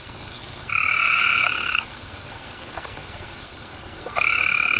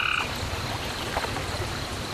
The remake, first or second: first